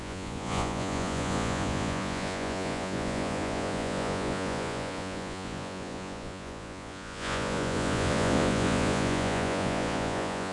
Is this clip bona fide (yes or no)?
no